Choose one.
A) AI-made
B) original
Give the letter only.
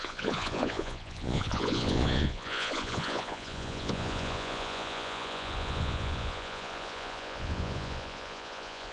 A